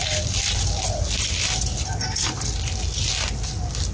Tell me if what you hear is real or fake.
real